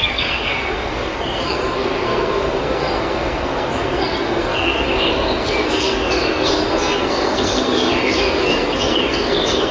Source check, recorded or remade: remade